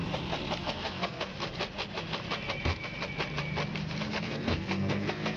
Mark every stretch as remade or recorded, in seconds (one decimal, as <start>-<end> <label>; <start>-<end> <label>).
0.0-0.6 recorded; 0.6-1.3 remade; 1.3-4.2 recorded; 4.2-5.4 remade